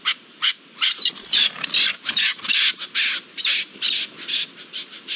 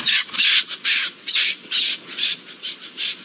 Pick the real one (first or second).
first